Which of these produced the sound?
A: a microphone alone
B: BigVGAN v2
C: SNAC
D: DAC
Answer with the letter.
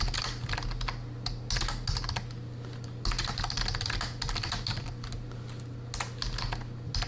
A